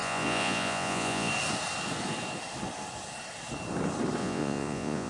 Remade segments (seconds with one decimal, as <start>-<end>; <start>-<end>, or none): 0.0-1.3; 4.2-5.1